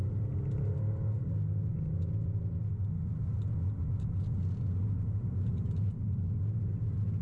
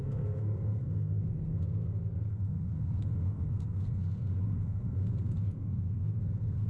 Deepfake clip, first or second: second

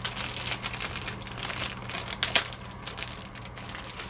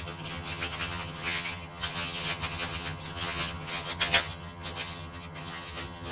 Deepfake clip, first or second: second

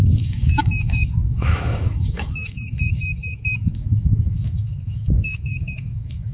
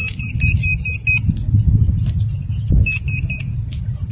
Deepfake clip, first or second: first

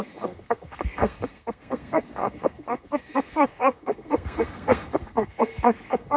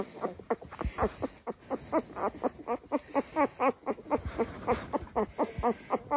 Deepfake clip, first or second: first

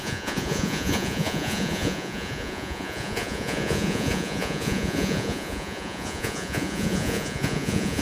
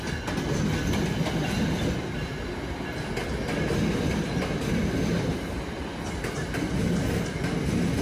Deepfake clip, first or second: first